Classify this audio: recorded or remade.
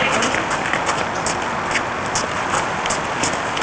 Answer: recorded